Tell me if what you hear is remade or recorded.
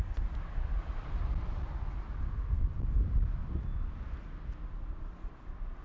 recorded